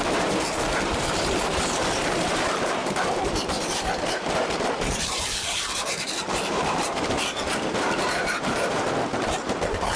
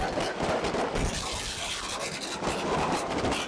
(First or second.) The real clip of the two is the second